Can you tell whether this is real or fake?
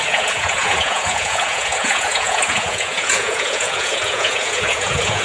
fake